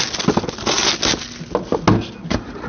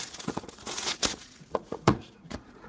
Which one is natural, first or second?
first